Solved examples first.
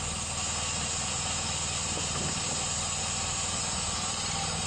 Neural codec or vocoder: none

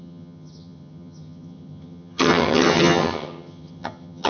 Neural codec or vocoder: vocoder, HiFi-GAN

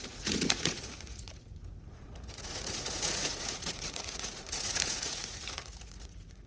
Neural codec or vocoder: vocoder, Vocos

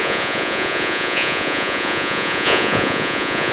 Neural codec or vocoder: vocoder, Vocos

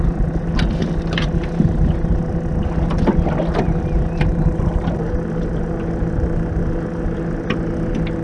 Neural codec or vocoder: none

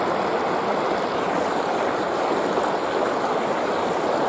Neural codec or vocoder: none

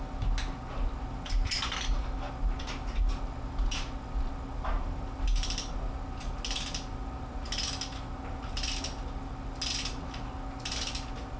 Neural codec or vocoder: none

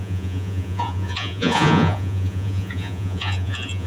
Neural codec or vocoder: vocoder, Vocos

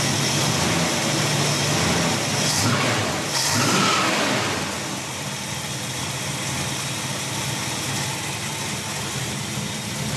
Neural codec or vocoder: none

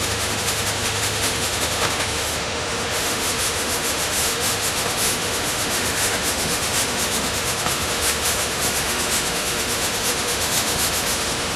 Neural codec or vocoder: autoencoder, DAC-VAE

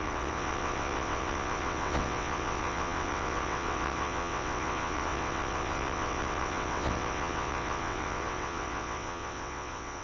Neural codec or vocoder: vocoder, WaveNeXt